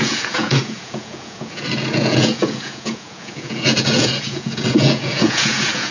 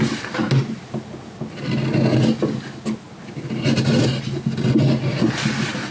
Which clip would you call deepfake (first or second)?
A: first